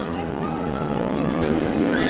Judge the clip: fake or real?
fake